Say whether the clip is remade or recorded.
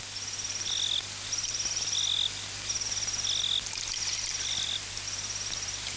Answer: recorded